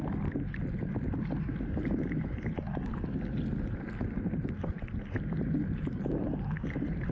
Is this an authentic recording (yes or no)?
yes